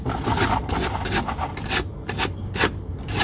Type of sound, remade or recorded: recorded